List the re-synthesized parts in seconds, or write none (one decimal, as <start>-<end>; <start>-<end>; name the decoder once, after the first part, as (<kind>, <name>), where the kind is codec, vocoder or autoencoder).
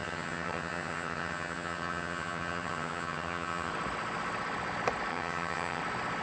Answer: 0.0-3.7 (vocoder, HiFi-GAN); 5.1-5.8